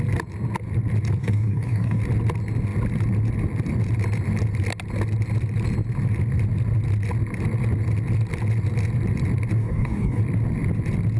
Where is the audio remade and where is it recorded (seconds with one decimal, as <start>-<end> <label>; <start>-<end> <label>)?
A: 0.0-1.2 recorded; 1.2-2.0 remade; 2.0-9.6 recorded; 9.6-10.2 remade; 10.2-11.2 recorded